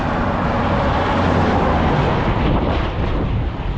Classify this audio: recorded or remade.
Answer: recorded